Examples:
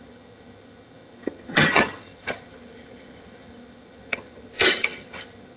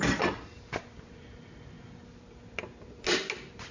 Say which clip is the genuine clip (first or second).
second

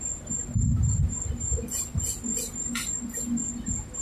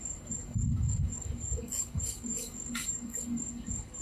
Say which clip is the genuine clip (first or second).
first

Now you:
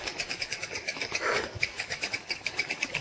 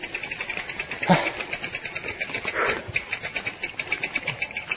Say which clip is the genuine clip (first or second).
second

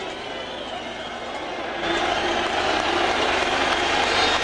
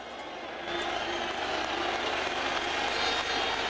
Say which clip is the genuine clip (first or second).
second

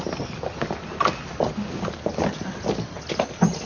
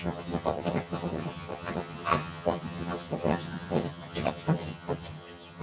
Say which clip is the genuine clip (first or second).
first